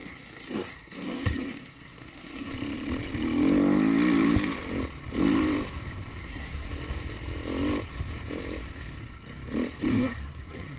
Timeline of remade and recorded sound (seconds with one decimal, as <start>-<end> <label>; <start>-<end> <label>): 0.0-2.5 remade; 2.5-6.2 recorded; 6.2-6.7 remade; 6.7-9.9 recorded; 9.9-10.8 remade